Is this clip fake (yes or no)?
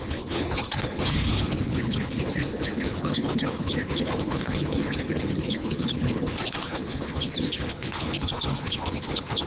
yes